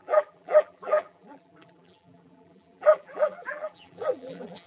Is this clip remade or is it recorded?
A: remade